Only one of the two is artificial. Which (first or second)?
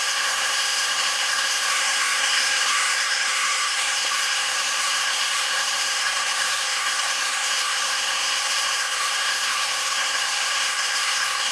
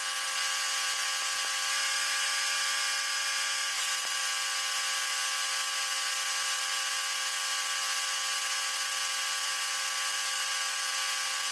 first